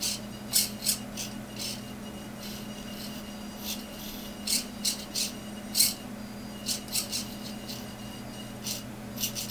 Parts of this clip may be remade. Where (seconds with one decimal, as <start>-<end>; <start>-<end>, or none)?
none